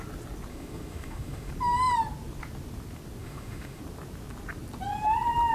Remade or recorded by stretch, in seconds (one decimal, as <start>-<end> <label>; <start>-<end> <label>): 0.0-0.5 recorded; 0.5-1.5 remade; 1.5-3.2 recorded; 3.2-3.8 remade; 3.8-5.5 recorded